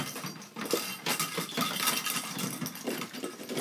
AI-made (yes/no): no